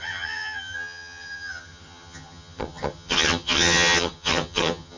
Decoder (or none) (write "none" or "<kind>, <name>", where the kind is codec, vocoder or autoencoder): vocoder, HiFi-GAN